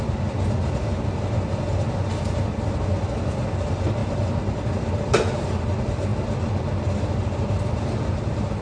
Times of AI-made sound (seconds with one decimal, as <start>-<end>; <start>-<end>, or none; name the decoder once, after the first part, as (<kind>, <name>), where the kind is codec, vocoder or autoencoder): none